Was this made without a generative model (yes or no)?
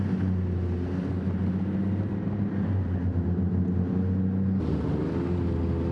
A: yes